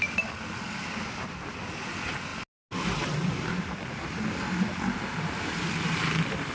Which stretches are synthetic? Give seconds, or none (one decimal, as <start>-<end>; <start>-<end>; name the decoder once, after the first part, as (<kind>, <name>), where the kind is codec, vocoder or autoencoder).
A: none